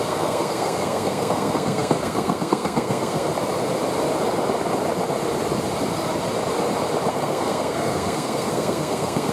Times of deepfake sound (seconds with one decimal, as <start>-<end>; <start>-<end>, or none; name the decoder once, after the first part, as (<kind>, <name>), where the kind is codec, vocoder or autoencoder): 0.0-3.3 (codec, SNAC); 7.1-9.3